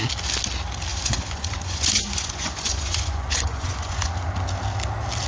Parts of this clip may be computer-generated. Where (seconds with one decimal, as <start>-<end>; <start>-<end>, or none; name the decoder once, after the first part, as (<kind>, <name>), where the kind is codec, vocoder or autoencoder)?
0.9-4.1 (vocoder, Vocos)